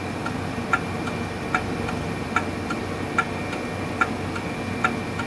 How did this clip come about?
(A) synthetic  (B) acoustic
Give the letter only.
B